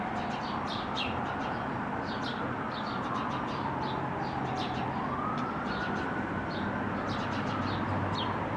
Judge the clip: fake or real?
fake